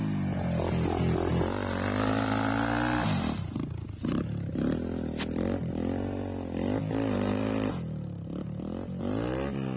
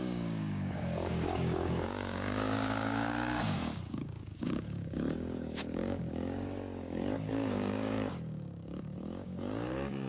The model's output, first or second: second